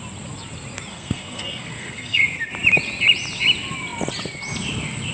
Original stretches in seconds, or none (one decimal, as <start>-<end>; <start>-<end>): 0.0-0.9; 2.2-5.1